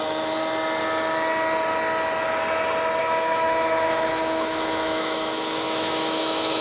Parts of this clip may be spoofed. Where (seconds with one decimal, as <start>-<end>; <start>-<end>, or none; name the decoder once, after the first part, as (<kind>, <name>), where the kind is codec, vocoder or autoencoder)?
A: 3.0-6.6 (autoencoder, DAC-VAE)